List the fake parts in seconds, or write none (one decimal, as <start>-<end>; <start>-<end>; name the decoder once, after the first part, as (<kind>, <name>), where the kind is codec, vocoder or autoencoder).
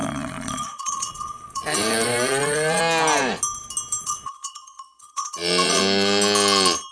0.0-2.8 (vocoder, Vocos); 4.0-5.8